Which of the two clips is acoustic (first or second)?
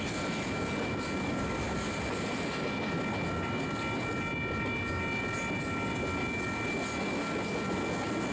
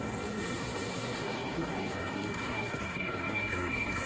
first